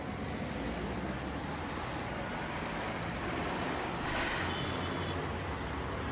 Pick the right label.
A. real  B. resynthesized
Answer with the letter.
A